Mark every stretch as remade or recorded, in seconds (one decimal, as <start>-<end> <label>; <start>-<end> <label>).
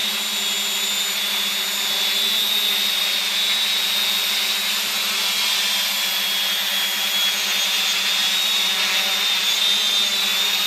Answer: 0.0-10.7 recorded